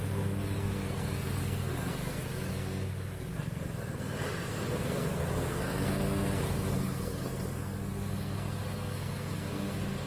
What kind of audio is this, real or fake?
fake